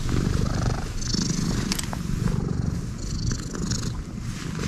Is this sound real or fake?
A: real